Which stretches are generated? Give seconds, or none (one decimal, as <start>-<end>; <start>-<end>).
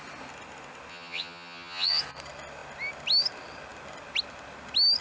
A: 0.9-2.0